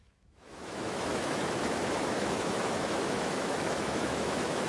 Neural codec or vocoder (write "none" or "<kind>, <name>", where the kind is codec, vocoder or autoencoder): autoencoder, DAC-VAE